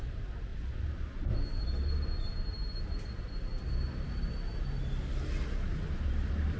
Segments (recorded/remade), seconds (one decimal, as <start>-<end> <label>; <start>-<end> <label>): 0.0-0.5 remade; 0.5-2.3 recorded; 2.3-3.5 remade; 3.5-5.9 recorded; 5.9-6.6 remade